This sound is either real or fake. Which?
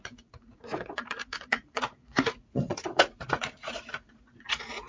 fake